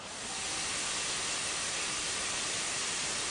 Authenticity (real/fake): real